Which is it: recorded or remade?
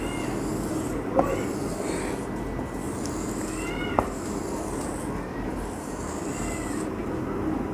recorded